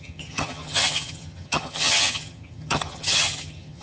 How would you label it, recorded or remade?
remade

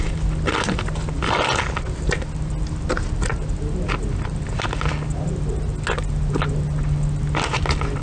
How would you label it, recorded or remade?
recorded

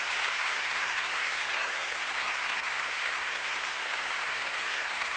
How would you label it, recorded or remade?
remade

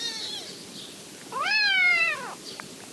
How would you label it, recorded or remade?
recorded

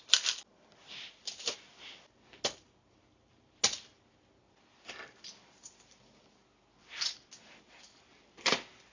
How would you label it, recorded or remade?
recorded